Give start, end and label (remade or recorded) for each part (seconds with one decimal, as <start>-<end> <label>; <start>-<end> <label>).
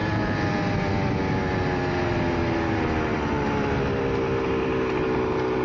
0.0-5.6 recorded